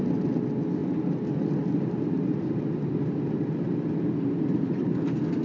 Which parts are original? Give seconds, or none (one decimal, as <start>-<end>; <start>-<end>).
0.0-5.4